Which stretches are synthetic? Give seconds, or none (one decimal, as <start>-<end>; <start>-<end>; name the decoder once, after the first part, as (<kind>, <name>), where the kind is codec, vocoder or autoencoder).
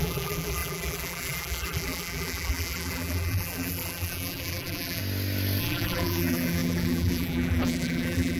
0.0-5.0 (vocoder, BigVGAN v2); 5.6-8.4